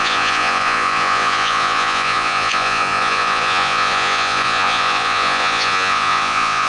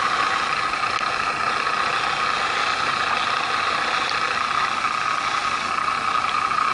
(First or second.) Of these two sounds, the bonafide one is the second